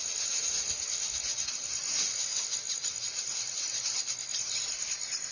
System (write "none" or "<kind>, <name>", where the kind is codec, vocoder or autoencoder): none